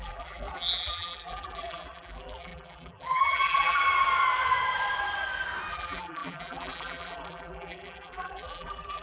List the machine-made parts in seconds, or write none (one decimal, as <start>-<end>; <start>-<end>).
0.0-3.8; 5.7-9.0